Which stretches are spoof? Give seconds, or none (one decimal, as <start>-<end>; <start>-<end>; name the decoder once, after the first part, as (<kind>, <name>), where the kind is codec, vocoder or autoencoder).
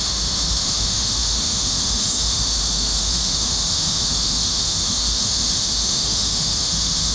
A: 0.0-7.1 (autoencoder, DAC-VAE)